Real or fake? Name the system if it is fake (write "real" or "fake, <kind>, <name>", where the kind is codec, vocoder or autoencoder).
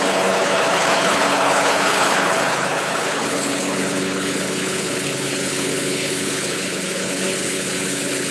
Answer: fake, codec, HILCodec